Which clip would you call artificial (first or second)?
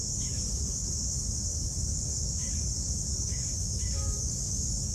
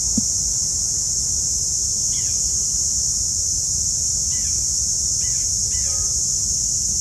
first